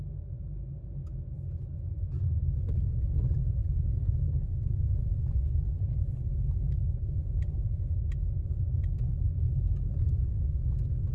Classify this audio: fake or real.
real